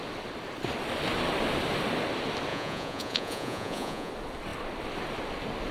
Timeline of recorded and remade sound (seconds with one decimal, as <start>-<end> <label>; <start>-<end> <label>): 0.0-2.5 recorded; 2.5-4.1 remade; 4.1-5.7 recorded